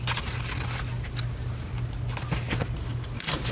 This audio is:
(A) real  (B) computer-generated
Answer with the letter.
A